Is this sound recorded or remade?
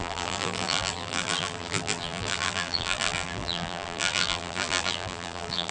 remade